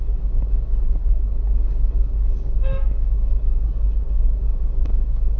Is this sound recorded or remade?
remade